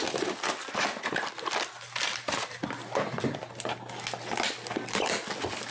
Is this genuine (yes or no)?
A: yes